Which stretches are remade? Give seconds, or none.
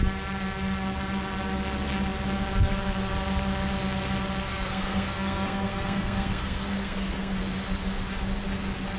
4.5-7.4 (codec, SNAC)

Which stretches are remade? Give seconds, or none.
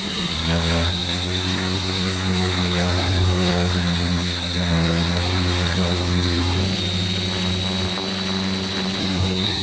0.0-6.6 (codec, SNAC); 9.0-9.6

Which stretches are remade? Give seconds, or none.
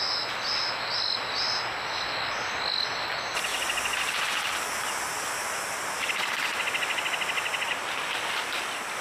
none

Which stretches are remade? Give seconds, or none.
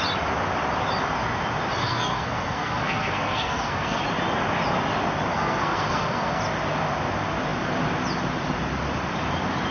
1.8-4.0 (codec, SNAC); 5.3-6.4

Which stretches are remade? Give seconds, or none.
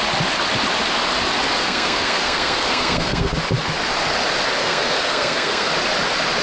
1.6-3.4 (codec, SNAC); 4.6-5.7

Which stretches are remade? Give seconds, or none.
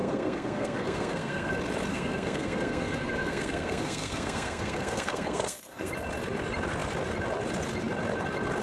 0.0-1.5 (codec, SNAC); 1.9-5.9